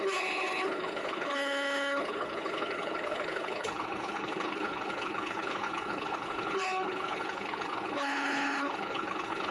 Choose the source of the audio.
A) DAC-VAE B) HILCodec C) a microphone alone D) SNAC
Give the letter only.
B